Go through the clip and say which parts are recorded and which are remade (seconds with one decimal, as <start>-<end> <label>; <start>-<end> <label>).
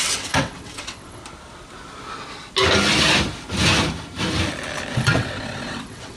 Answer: 0.0-1.2 remade; 1.2-4.9 recorded; 4.9-6.2 remade